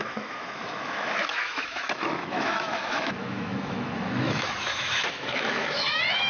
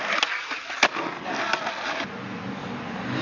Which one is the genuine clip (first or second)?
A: second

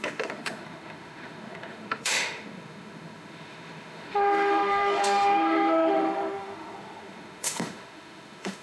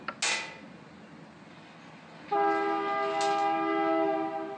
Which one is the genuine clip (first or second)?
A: second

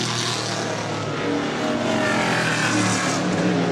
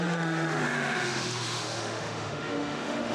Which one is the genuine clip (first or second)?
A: first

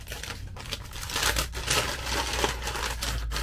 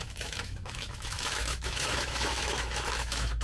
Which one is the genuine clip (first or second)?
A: first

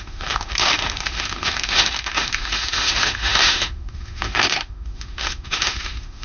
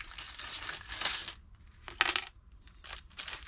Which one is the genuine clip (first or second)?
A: second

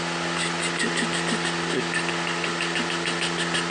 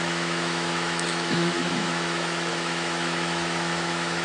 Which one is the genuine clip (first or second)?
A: first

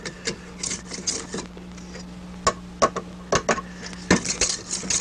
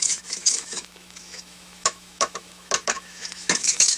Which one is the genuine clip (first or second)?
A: first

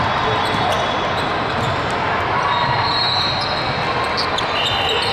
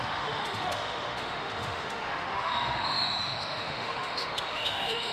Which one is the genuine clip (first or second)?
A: first